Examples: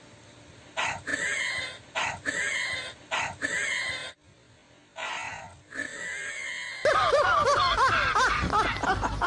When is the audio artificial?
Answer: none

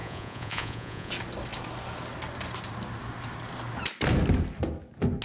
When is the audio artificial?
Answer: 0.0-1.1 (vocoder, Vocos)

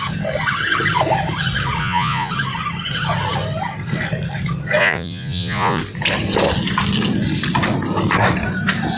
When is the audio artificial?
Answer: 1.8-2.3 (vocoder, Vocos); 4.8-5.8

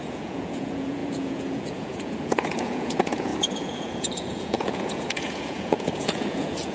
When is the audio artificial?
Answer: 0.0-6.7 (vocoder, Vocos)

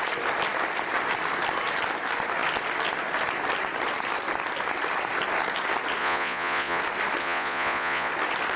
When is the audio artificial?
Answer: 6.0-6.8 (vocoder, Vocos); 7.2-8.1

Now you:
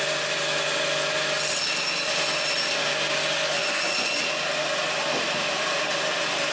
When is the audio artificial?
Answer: 3.6-4.2 (vocoder, Vocos)